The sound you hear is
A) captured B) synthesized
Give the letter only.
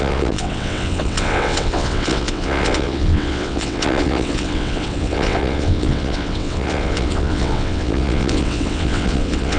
B